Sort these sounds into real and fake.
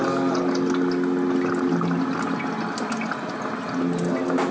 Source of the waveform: real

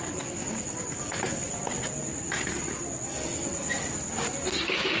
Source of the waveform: real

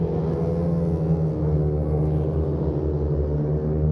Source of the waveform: real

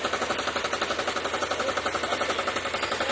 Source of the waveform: real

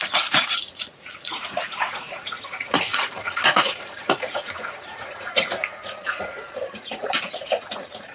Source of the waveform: fake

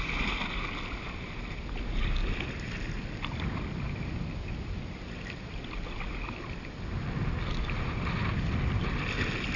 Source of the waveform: real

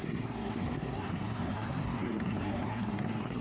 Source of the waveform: fake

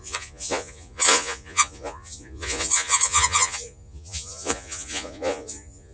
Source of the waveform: fake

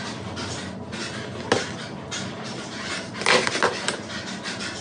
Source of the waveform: real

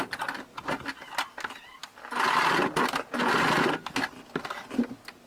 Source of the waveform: real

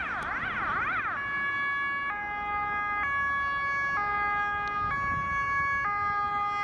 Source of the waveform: real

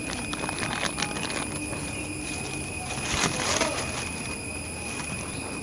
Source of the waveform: real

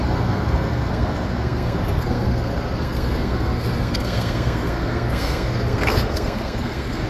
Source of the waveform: fake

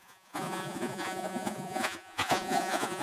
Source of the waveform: fake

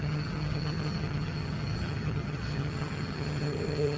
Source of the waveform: fake